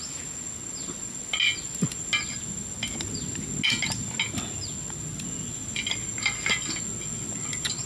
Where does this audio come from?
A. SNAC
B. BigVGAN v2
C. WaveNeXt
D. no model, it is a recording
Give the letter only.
D